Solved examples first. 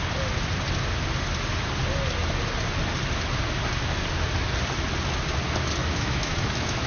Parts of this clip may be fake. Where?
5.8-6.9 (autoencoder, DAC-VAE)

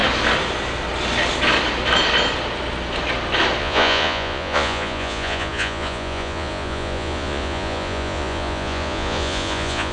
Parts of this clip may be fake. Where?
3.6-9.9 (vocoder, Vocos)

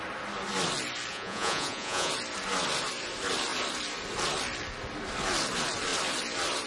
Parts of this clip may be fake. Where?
1.1-2.1 (vocoder, Vocos)

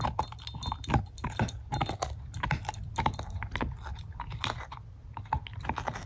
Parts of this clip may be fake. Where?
none

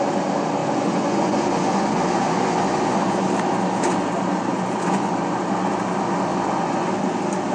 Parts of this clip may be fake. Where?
0.6-3.3 (vocoder, Vocos); 4.5-5.4; 6.3-6.9

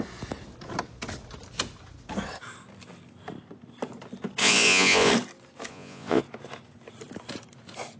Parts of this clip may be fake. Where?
4.4-5.1 (vocoder, Vocos); 5.7-6.2

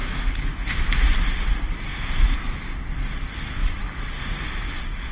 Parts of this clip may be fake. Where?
0.0-1.1 (autoencoder, DAC-VAE); 1.9-2.6; 3.6-4.1

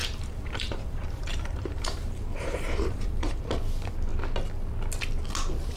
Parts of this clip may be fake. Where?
0.0-3.5 (vocoder, BigVGAN v2)